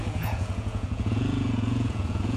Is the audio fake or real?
fake